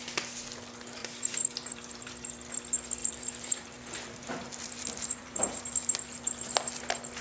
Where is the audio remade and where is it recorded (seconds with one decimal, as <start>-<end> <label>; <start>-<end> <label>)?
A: 0.0-1.0 recorded; 1.0-2.1 remade; 2.1-3.0 recorded; 3.0-5.6 remade; 5.6-7.2 recorded